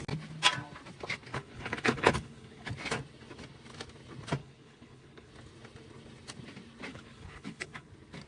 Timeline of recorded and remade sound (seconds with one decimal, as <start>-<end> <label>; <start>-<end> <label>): 0.0-1.3 recorded; 1.3-2.7 remade; 2.7-4.4 recorded; 4.4-5.3 remade; 5.3-6.9 recorded; 6.9-7.9 remade; 7.9-8.3 recorded